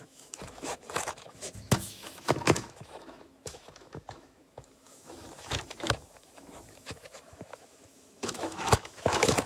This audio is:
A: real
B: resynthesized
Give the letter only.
B